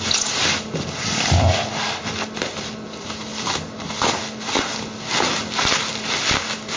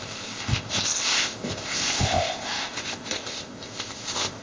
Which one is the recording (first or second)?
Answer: first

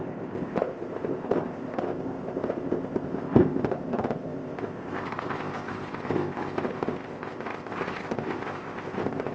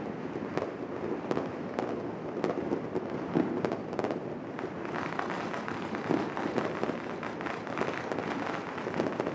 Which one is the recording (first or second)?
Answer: second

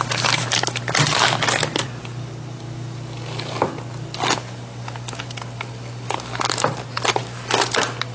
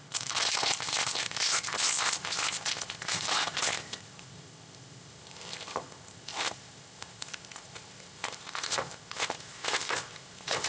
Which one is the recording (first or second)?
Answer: first